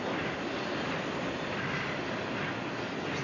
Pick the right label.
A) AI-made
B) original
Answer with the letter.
B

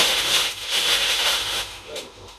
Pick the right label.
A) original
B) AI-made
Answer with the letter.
B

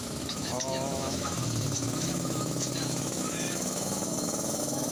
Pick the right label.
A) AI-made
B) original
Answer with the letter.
A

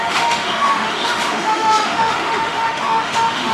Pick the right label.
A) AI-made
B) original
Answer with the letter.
A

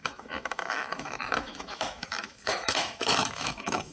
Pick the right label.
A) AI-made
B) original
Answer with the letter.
A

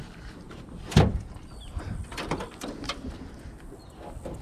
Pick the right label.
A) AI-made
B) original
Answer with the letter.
B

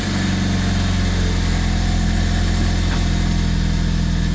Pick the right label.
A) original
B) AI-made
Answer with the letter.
A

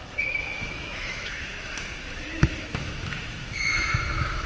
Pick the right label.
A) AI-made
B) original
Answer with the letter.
A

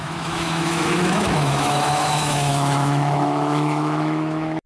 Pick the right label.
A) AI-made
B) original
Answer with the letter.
A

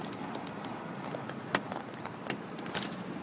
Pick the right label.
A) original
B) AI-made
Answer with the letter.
A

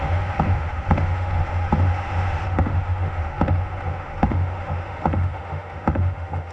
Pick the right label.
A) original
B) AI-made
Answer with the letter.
B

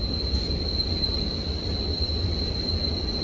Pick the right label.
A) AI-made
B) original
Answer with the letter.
B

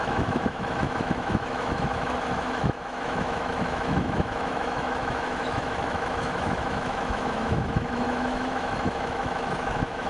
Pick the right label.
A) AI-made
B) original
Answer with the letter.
A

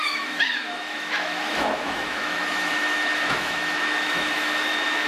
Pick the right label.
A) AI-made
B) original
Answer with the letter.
A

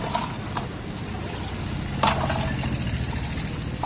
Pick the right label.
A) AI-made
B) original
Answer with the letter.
B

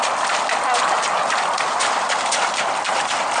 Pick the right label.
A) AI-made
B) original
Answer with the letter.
B